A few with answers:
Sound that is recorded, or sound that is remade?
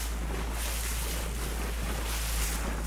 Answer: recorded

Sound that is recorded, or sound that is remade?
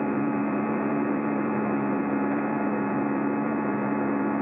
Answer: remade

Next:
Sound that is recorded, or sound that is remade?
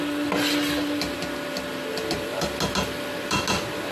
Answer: recorded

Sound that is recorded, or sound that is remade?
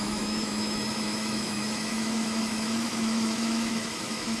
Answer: remade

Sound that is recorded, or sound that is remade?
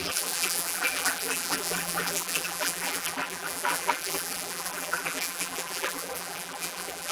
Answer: remade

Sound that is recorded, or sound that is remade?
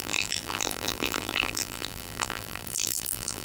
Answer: remade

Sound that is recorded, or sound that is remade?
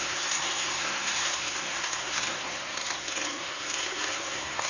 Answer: remade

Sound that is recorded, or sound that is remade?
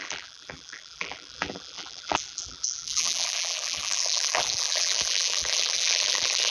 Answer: remade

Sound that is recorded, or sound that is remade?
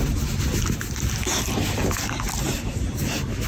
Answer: recorded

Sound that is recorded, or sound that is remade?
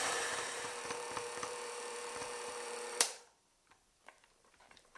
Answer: remade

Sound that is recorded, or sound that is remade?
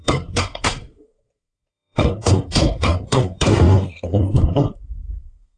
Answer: remade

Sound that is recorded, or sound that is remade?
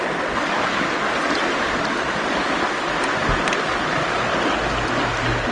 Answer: recorded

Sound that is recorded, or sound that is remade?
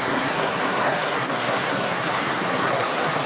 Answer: remade